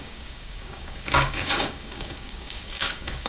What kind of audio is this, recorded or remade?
remade